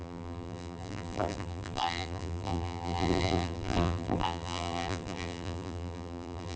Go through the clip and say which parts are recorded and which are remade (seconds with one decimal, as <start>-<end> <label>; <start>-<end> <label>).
0.0-6.6 remade